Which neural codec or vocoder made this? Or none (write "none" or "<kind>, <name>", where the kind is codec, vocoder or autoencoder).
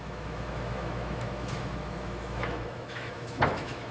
autoencoder, DAC-VAE